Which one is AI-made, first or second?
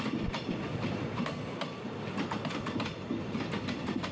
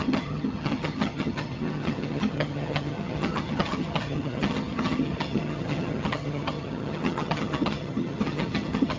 second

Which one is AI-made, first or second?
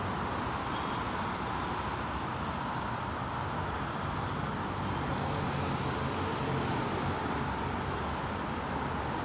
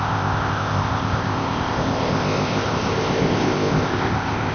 second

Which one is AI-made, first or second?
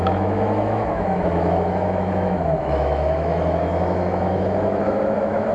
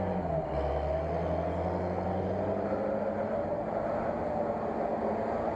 first